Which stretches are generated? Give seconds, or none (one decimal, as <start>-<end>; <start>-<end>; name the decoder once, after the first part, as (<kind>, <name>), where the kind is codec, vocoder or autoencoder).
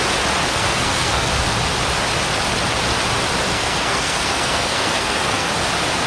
0.5-1.3 (codec, SNAC); 3.5-5.5